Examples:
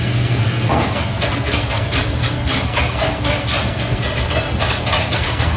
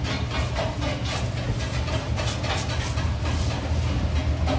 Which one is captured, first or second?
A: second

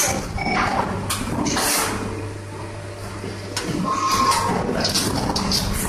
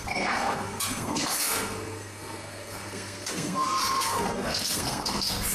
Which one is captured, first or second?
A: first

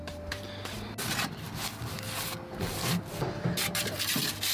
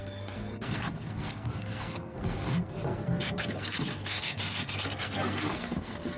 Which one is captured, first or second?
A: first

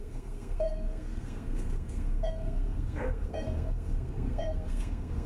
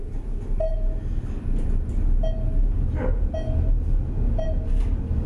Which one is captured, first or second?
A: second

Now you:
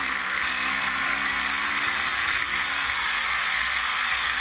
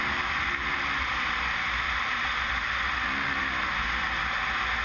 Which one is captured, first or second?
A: second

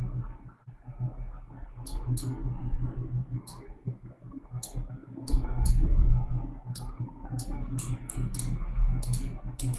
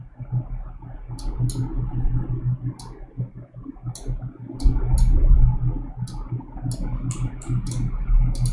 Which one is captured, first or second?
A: second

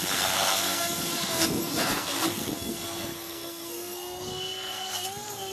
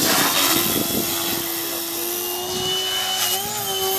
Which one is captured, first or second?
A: second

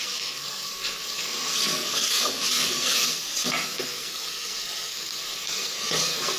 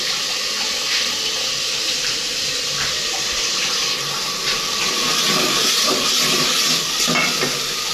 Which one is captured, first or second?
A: second